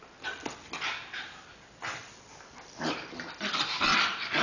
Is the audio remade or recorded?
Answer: recorded